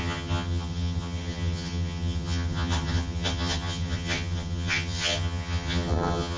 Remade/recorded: remade